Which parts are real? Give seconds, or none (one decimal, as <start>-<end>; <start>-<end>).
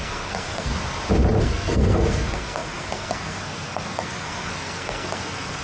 0.7-1.4